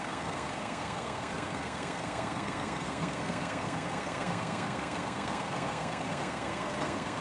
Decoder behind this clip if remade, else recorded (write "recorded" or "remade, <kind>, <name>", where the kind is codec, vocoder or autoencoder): remade, codec, SNAC